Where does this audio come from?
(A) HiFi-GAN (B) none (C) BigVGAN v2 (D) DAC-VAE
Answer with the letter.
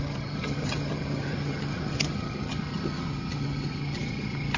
A